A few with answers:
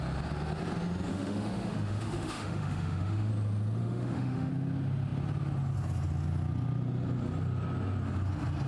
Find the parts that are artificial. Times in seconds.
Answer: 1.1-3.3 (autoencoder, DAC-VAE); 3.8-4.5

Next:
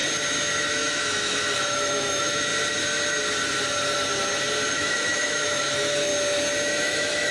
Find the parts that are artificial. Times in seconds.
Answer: 0.7-2.5 (autoencoder, DAC-VAE); 4.7-6.1; 6.8-7.3